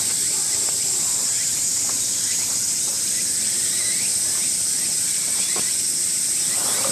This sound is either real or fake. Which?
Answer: fake